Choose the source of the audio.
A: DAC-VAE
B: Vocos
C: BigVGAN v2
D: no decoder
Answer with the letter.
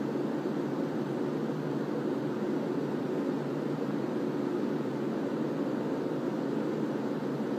D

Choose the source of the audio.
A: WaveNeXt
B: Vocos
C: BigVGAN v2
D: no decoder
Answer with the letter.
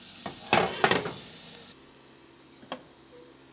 D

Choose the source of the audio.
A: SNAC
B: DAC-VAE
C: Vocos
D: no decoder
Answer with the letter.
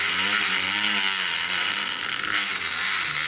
D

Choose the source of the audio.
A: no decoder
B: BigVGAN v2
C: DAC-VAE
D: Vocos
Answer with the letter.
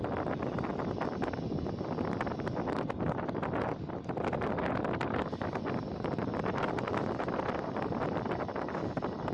A